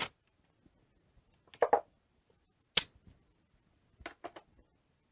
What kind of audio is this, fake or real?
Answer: real